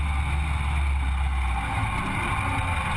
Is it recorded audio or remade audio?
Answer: recorded